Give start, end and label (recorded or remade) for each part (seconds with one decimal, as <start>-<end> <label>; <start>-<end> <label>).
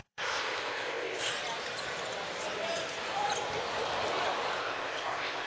0.0-1.3 remade; 1.3-4.6 recorded; 4.6-5.5 remade